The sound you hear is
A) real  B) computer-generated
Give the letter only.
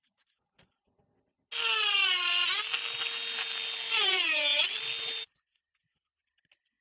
A